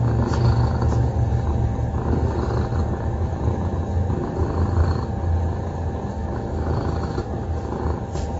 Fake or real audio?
real